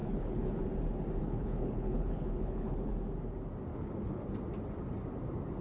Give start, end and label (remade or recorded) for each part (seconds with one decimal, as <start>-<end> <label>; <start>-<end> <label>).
0.0-0.6 remade; 0.6-1.2 recorded; 1.2-2.9 remade; 2.9-3.7 recorded; 3.7-4.3 remade; 4.3-5.6 recorded